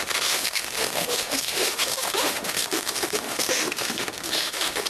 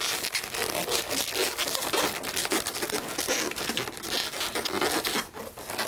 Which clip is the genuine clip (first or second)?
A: second